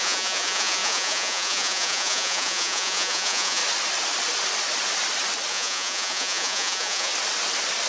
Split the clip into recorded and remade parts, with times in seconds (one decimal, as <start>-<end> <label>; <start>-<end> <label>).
0.0-3.6 remade; 3.6-5.5 recorded; 5.5-7.1 remade; 7.1-7.9 recorded